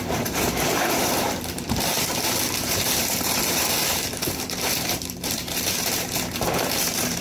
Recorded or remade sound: remade